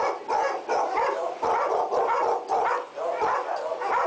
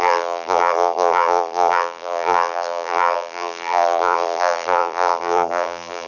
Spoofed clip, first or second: second